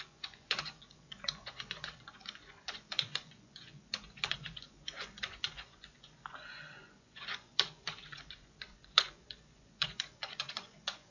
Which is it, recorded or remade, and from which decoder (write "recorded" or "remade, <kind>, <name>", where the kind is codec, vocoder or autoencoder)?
remade, vocoder, Vocos